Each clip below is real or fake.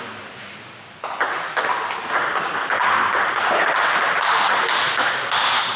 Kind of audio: real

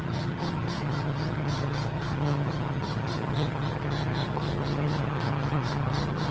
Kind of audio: fake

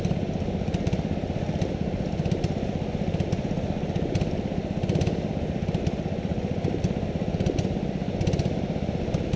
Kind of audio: real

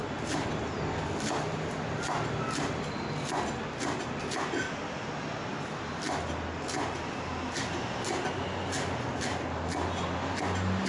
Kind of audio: real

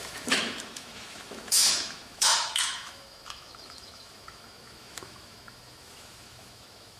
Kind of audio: fake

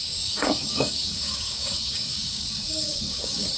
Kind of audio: fake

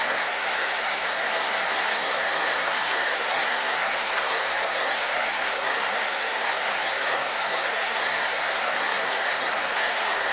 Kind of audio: fake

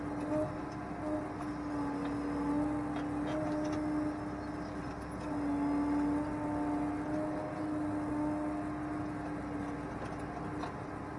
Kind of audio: real